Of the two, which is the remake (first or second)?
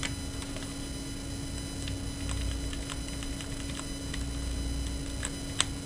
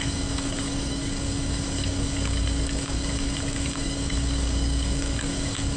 second